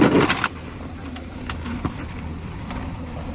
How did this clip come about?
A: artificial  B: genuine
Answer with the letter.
A